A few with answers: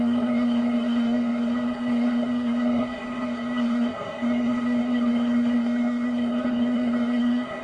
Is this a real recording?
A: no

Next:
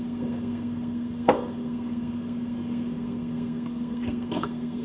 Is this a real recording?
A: no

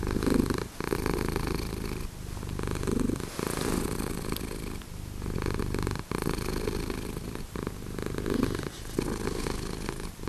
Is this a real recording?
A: yes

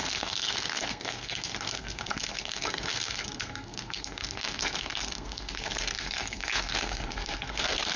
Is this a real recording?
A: no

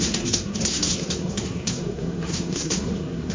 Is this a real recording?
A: no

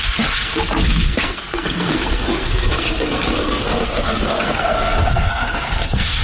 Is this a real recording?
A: no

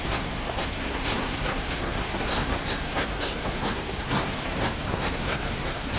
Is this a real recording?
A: no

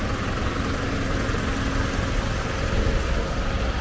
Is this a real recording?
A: yes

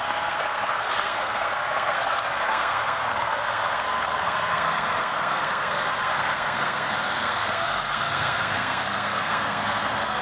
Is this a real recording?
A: no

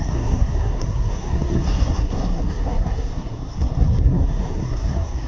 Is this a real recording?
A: no